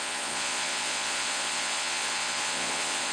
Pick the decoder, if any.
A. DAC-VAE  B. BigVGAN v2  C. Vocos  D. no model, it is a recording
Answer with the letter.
C